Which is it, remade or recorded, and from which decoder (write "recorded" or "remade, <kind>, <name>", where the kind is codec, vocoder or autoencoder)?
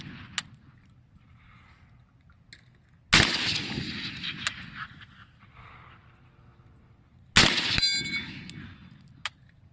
recorded